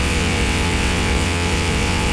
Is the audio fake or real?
fake